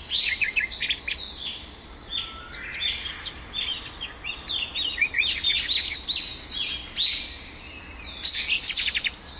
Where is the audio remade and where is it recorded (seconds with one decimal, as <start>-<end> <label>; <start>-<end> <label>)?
0.0-9.4 recorded